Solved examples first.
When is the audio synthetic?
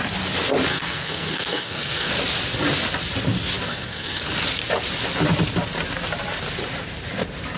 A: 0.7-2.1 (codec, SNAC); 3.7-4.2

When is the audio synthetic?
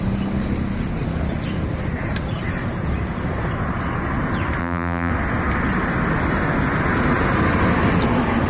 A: 4.6-5.1 (vocoder, BigVGAN v2)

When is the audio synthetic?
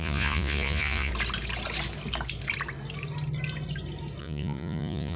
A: 0.0-1.1 (vocoder, Vocos); 4.2-5.2